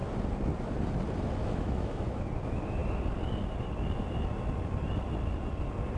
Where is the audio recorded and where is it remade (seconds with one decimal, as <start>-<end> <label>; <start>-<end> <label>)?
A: 0.0-1.4 recorded; 1.4-2.2 remade; 2.2-6.0 recorded